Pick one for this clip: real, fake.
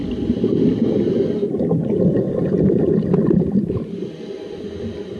real